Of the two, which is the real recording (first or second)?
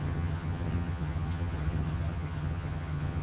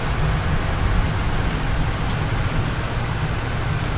second